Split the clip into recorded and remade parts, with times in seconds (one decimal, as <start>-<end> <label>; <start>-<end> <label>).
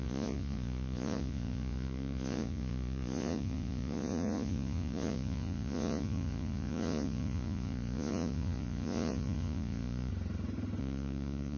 0.0-10.1 remade; 10.1-10.8 recorded; 10.8-11.6 remade